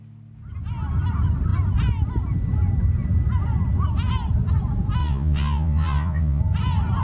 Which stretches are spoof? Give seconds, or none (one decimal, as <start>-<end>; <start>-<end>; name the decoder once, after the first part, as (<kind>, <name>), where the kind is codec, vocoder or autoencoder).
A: 5.0-6.4 (vocoder, Vocos)